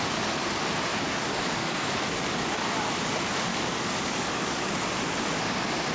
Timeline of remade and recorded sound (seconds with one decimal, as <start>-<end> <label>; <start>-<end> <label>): 0.0-0.9 recorded; 0.9-2.8 remade; 2.8-3.5 recorded; 3.5-4.7 remade; 4.7-5.9 recorded